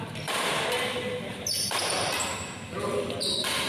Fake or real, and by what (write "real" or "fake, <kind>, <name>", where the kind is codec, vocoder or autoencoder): real